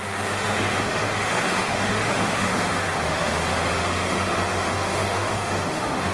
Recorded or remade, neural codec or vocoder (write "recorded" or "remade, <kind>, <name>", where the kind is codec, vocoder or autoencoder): remade, autoencoder, DAC-VAE